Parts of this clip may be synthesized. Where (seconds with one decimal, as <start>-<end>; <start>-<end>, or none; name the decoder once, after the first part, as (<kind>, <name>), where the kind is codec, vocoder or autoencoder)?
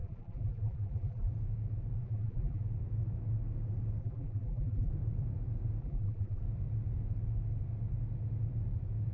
0.0-1.3 (vocoder, BigVGAN v2); 2.0-2.6; 4.0-4.9; 5.8-6.4